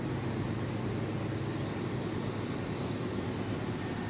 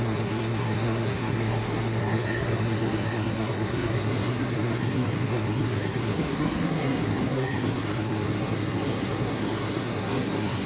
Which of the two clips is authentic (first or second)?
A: first